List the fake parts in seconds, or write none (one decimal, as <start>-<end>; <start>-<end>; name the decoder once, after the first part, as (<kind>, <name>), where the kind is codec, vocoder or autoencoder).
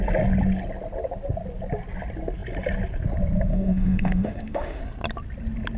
3.5-4.8 (autoencoder, DAC-VAE)